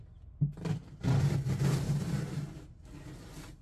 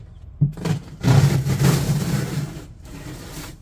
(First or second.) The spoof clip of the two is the second